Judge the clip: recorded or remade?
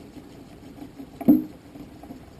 recorded